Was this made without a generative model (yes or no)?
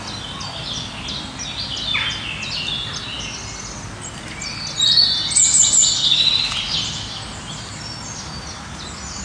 yes